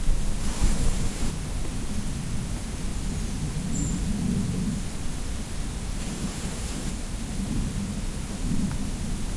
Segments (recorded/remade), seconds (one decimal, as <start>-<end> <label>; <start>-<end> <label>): 0.0-0.4 recorded; 0.4-1.3 remade; 1.3-6.0 recorded; 6.0-6.9 remade; 6.9-9.4 recorded